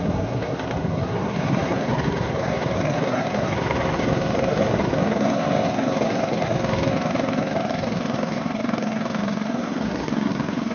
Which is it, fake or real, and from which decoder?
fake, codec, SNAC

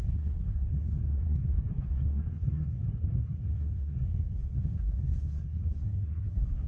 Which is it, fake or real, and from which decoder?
fake, codec, SNAC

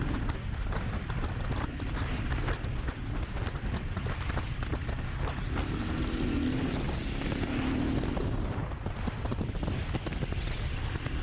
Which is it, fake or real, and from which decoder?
real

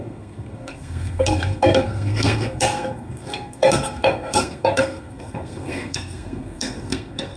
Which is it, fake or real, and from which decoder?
fake, codec, SNAC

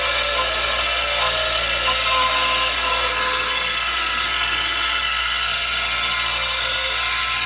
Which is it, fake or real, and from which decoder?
fake, codec, SNAC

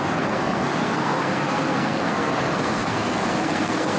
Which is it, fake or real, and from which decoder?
fake, codec, SNAC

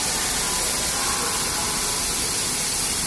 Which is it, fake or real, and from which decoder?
real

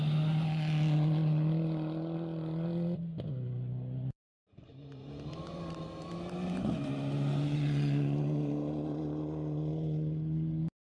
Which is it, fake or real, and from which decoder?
real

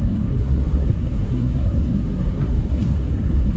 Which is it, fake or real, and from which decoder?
fake, codec, SNAC